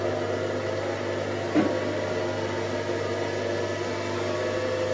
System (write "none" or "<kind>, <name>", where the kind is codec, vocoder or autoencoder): none